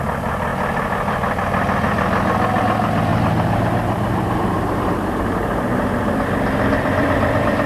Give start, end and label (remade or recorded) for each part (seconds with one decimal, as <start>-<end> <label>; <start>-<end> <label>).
0.0-3.1 recorded; 3.1-6.1 remade; 6.1-7.7 recorded